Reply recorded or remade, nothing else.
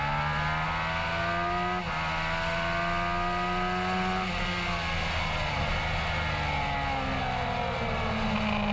recorded